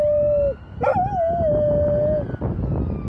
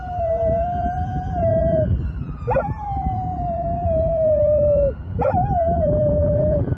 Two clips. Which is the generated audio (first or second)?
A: second